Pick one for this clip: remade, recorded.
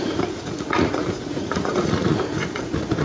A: remade